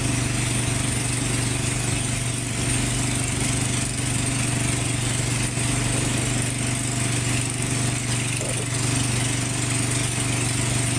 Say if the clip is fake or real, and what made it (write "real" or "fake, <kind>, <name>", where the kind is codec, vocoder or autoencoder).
real